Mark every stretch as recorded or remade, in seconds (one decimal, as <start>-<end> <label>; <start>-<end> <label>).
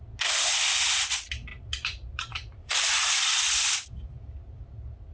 0.0-1.5 recorded; 1.5-3.2 remade; 3.2-5.1 recorded